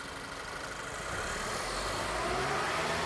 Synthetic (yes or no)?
no